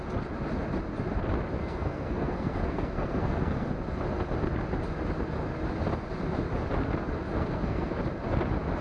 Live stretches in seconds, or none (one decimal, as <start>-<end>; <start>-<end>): 0.0-1.6; 3.7-7.3; 8.0-8.8

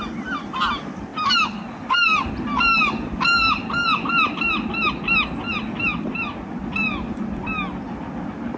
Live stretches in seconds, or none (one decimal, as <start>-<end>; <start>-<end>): 0.0-8.6

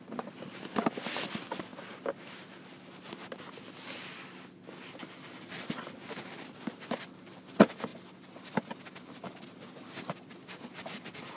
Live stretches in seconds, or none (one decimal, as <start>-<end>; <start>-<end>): 0.0-11.4